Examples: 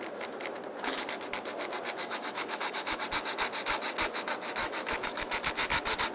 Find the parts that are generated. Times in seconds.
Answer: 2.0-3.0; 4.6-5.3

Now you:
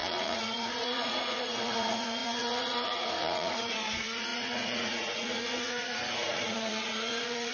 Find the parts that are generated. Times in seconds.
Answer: 0.0-7.5